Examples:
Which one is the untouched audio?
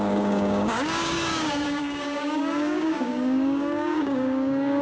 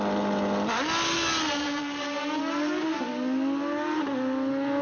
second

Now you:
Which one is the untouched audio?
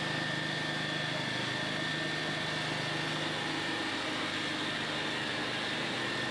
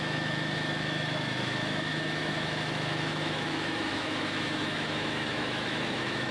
first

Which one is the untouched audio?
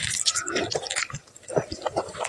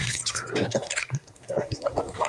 first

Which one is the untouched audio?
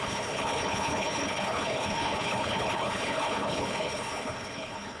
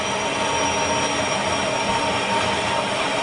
second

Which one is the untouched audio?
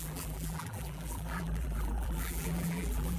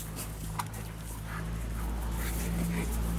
second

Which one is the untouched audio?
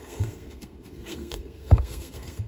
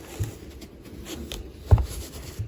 second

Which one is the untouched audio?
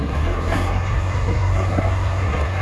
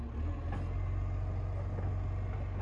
second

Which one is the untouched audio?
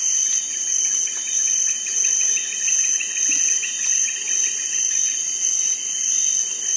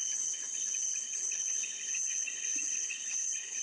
first